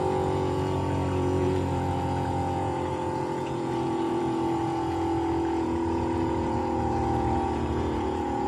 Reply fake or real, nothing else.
fake